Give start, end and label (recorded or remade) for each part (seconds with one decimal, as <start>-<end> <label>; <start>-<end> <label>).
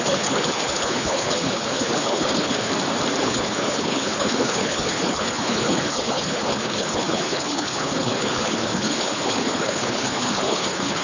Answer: 0.0-2.7 remade; 2.7-3.2 recorded; 3.2-11.0 remade